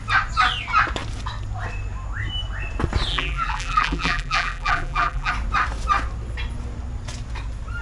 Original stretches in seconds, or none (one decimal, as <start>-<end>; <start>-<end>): 0.0-3.1; 5.3-7.8